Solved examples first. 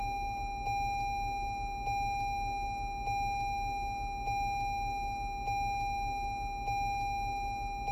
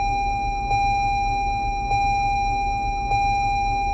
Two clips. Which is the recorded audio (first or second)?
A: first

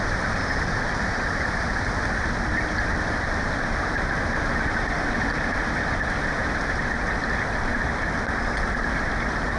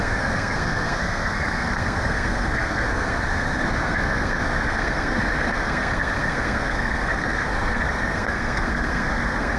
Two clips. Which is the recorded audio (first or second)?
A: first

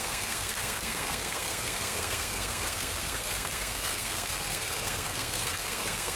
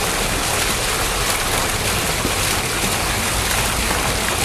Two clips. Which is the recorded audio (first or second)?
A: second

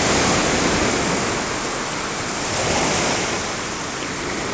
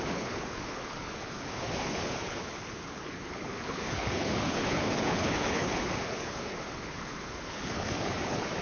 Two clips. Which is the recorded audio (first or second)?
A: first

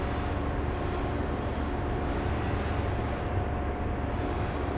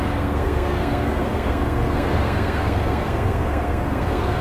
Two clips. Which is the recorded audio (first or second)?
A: first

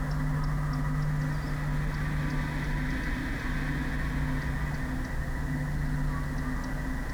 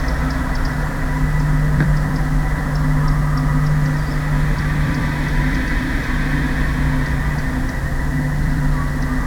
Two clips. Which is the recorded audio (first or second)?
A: first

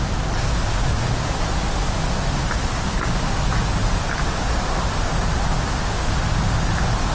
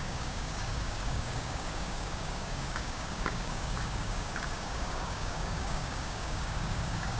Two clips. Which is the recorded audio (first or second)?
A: first